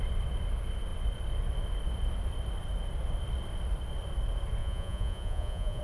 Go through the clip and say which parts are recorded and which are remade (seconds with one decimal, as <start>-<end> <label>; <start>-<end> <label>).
0.0-4.6 recorded; 4.6-5.8 remade